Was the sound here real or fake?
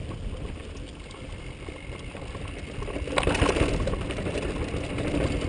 real